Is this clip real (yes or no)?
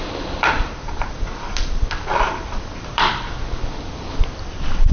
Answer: no